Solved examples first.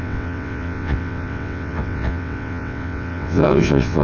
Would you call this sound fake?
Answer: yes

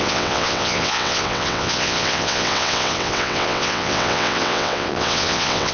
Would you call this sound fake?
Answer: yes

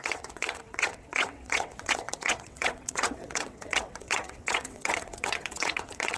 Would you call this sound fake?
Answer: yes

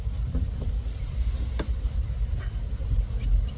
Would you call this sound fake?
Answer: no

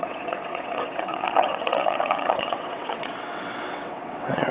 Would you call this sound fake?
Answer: yes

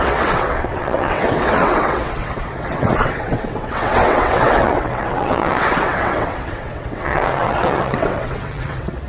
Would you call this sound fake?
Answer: yes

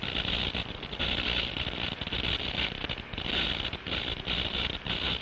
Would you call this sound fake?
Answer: no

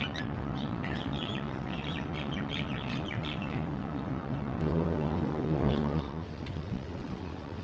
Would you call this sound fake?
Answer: yes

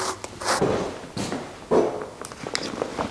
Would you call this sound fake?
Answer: no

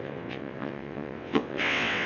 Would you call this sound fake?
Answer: yes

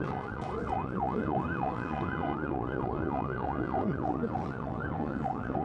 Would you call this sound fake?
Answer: yes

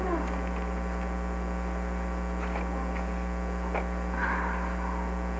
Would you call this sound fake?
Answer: no